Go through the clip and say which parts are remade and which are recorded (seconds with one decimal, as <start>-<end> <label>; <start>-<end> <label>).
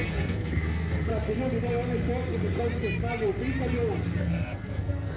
0.0-1.1 remade; 1.1-4.2 recorded; 4.2-5.2 remade